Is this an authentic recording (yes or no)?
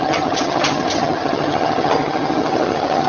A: no